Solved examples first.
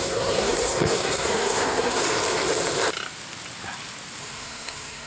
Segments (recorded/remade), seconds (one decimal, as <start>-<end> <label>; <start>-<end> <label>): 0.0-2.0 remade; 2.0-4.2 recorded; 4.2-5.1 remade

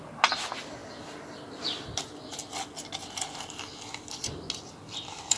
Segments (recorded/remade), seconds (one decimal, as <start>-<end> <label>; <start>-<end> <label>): 0.0-5.4 recorded

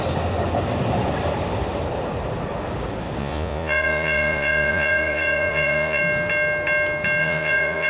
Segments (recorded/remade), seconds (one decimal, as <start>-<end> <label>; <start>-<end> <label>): 0.0-3.2 recorded; 3.2-6.0 remade; 6.0-7.2 recorded; 7.2-7.9 remade